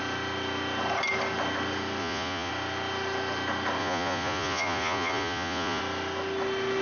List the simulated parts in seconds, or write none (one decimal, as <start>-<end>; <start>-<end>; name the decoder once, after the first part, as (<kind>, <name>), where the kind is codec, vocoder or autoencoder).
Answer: 2.0-2.5 (vocoder, Vocos); 3.8-5.8